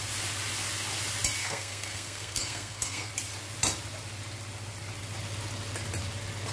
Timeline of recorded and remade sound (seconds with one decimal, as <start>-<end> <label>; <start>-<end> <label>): 0.0-1.4 recorded; 1.4-3.1 remade; 3.1-6.5 recorded